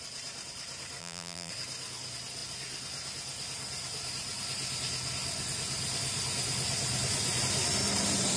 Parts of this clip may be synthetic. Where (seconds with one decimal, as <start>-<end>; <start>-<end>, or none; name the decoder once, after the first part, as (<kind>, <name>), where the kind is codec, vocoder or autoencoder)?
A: 1.0-1.5 (vocoder, BigVGAN v2)